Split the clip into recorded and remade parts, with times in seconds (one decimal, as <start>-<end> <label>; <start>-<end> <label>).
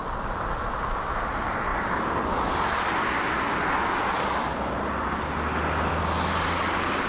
0.0-7.1 recorded